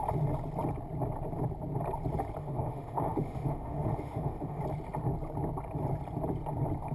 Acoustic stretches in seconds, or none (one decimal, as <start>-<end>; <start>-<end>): 0.0-2.4; 4.6-6.9